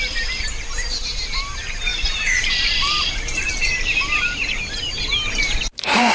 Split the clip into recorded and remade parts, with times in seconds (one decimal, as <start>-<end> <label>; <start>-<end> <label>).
0.0-0.5 remade; 0.5-1.2 recorded; 1.2-6.1 remade